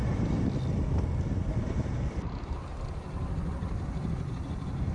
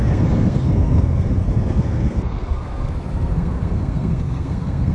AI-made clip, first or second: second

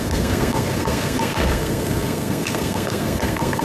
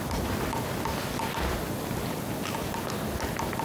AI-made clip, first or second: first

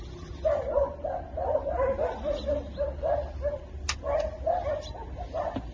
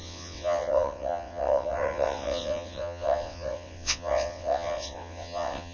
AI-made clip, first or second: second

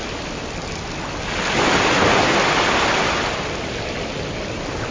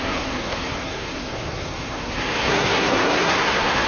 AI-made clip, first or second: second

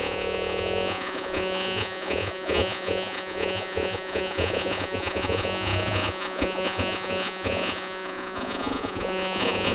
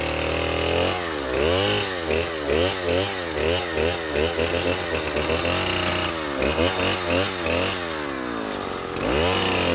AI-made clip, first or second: first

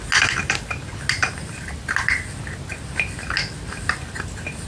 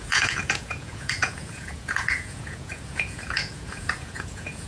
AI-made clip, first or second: second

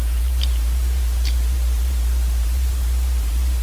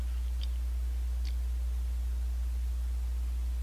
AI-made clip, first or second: first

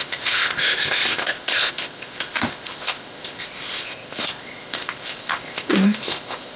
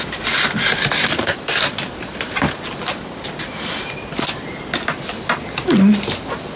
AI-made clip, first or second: first